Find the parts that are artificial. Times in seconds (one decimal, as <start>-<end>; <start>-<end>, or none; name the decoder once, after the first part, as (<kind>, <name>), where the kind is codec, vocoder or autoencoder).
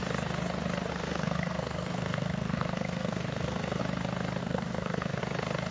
0.9-3.8 (codec, SNAC); 4.4-5.2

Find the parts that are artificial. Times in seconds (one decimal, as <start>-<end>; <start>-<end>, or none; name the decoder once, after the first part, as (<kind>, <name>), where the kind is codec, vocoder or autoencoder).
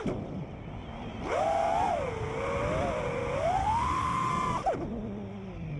3.6-4.3 (autoencoder, DAC-VAE)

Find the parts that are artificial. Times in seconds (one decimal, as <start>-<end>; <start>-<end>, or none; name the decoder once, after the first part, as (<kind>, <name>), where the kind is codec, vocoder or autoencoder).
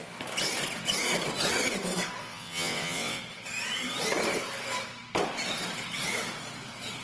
2.2-3.2 (vocoder, WaveNeXt)